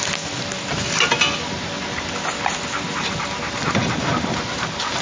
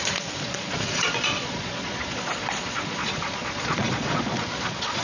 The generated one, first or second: second